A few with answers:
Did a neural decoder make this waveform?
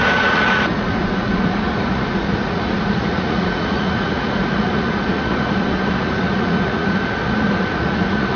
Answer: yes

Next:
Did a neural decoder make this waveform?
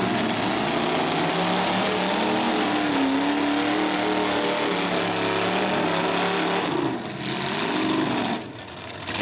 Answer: no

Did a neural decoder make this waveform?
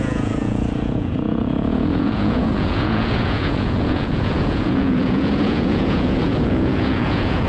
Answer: yes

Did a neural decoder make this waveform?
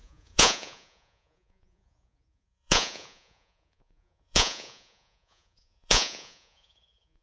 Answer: yes